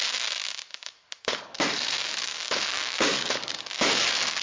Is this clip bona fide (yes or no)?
no